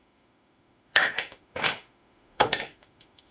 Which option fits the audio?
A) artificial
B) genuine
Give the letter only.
A